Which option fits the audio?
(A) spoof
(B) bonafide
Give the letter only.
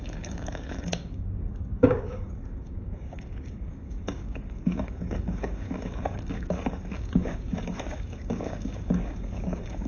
A